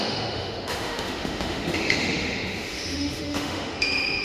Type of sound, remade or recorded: remade